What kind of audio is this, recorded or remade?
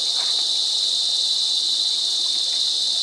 remade